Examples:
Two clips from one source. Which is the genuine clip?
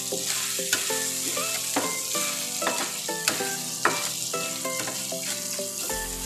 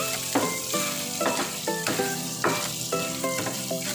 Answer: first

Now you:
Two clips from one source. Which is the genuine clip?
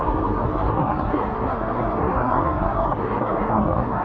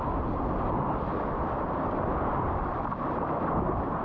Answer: second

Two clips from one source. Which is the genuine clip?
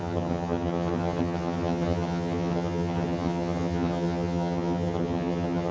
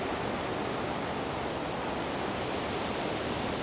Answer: second